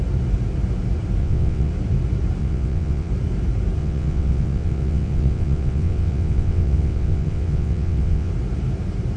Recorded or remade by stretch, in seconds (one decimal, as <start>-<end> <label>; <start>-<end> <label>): 0.0-1.2 recorded; 1.2-1.7 remade; 1.7-2.4 recorded; 2.4-3.1 remade; 3.1-3.8 recorded; 3.8-8.3 remade; 8.3-9.2 recorded